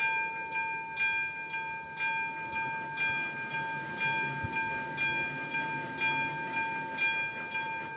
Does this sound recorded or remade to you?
recorded